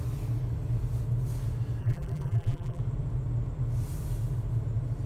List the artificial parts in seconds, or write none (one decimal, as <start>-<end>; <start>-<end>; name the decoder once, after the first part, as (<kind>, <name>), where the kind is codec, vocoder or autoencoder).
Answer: 1.8-2.8 (vocoder, BigVGAN v2)

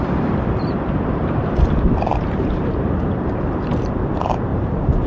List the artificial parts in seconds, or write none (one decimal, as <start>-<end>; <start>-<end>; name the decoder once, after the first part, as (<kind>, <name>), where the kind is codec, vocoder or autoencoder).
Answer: 0.0-5.1 (vocoder, BigVGAN v2)

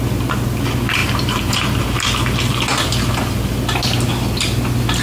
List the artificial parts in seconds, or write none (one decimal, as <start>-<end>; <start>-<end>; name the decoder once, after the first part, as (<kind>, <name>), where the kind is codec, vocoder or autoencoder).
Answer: 1.0-2.2 (vocoder, BigVGAN v2); 2.7-3.8

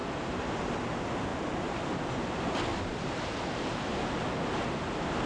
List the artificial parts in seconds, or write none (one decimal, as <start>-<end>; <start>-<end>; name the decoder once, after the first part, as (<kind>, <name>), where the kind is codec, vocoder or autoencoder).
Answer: 0.0-0.6 (vocoder, BigVGAN v2); 1.3-2.1; 2.7-4.1

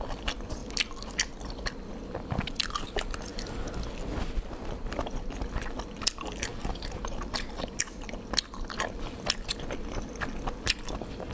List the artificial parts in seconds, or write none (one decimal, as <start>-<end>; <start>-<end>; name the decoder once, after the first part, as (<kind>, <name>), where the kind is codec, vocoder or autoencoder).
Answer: 6.5-8.0 (vocoder, BigVGAN v2)

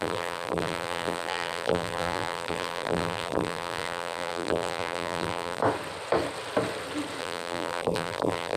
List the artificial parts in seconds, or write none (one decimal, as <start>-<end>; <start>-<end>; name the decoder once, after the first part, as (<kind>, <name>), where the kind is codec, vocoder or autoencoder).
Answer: 0.0-5.6 (vocoder, BigVGAN v2); 7.2-8.6

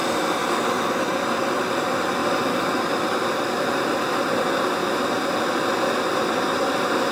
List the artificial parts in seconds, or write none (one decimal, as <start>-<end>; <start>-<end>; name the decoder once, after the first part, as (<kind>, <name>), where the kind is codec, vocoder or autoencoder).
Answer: 6.5-7.1 (vocoder, BigVGAN v2)